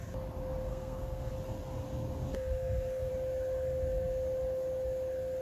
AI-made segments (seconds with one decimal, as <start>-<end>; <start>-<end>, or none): 0.7-1.3; 2.3-3.1